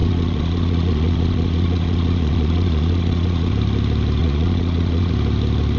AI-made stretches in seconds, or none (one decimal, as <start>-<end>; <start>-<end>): 0.0-3.5; 4.2-5.1